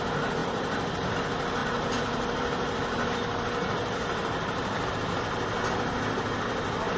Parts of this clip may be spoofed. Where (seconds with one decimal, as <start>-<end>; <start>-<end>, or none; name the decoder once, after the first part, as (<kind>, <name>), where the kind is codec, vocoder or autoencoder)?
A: 0.4-1.1 (vocoder, BigVGAN v2); 1.6-4.9